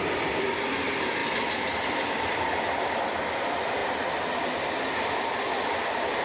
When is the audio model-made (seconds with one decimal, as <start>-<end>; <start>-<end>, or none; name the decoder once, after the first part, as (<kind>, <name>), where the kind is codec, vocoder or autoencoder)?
1.2-3.0 (vocoder, BigVGAN v2)